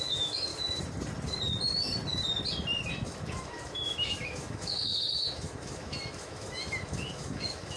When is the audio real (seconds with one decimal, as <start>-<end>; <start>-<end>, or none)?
0.5-2.9